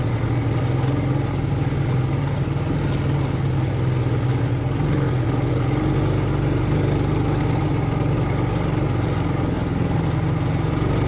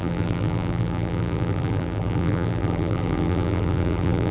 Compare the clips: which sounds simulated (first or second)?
second